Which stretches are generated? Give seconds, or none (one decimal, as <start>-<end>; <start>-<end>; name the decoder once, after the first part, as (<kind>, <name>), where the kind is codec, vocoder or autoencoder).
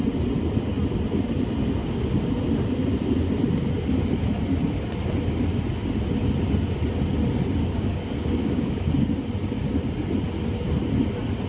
1.8-2.3 (codec, DAC); 7.6-8.9